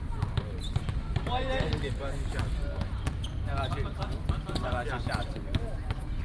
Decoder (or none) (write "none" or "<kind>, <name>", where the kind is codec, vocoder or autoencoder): none